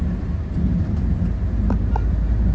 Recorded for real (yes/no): yes